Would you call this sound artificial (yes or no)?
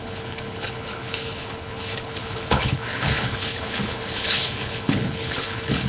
yes